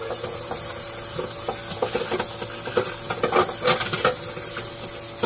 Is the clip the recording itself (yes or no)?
yes